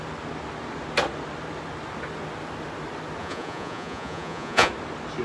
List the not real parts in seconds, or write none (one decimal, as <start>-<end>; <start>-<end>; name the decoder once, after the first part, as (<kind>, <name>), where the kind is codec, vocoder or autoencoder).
3.2-4.7 (vocoder, Vocos)